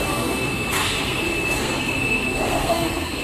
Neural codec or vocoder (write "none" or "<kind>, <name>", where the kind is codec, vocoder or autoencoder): codec, SNAC